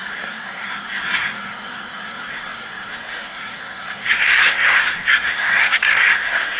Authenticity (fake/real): fake